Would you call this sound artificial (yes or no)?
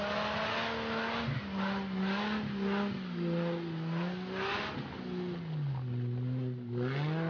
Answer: no